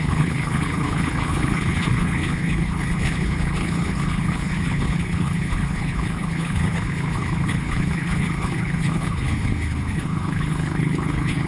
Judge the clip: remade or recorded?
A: remade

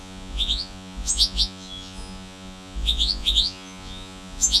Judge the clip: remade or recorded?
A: remade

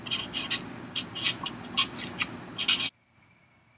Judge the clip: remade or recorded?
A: recorded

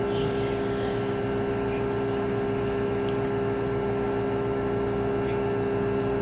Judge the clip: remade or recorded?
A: recorded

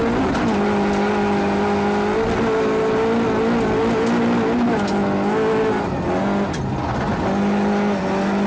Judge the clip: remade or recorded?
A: recorded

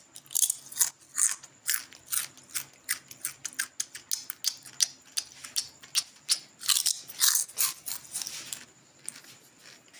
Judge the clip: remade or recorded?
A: recorded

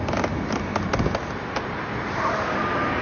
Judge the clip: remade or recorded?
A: recorded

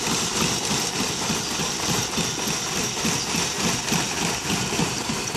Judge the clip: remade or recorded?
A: recorded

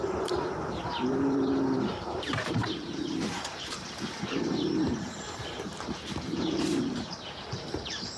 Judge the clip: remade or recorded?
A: remade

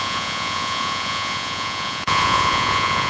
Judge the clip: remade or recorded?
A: remade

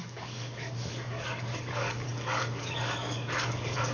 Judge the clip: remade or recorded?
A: remade